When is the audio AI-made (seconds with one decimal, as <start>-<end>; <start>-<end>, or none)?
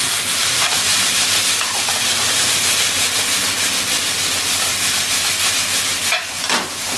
0.4-3.9